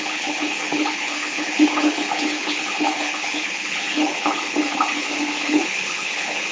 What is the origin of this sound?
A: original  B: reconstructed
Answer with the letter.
B